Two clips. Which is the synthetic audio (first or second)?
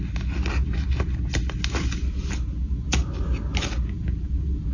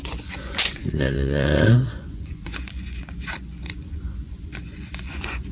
second